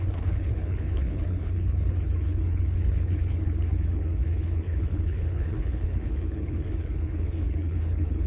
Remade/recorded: remade